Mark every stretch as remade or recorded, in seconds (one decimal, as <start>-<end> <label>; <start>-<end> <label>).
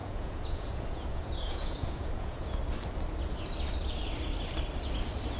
0.0-2.6 remade; 2.6-5.4 recorded